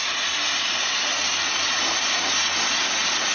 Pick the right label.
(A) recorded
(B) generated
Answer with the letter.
A